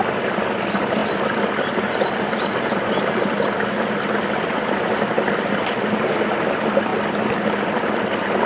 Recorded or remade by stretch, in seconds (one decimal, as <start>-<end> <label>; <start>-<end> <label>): 0.0-8.5 recorded